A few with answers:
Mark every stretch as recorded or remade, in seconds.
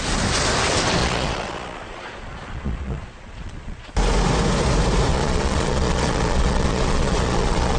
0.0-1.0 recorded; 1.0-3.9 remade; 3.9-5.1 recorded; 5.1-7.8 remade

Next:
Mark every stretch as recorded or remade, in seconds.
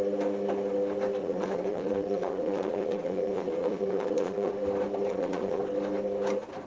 0.0-1.2 recorded; 1.2-4.5 remade; 4.5-5.1 recorded; 5.1-5.6 remade; 5.6-6.7 recorded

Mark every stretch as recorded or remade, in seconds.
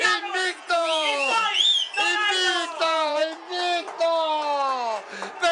0.0-1.7 remade; 1.7-2.5 recorded; 2.5-3.2 remade; 3.2-5.5 recorded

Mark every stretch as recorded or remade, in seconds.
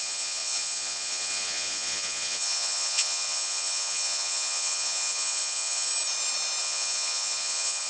0.0-5.9 remade; 5.9-6.6 recorded; 6.6-7.9 remade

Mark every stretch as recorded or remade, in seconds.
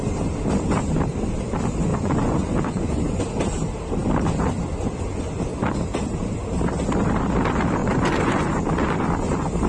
0.0-1.9 recorded; 1.9-3.2 remade; 3.2-7.8 recorded; 7.8-8.6 remade; 8.6-9.7 recorded